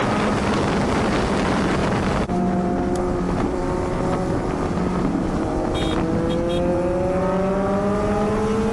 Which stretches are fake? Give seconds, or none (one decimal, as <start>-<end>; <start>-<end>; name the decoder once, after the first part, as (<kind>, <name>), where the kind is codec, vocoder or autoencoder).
none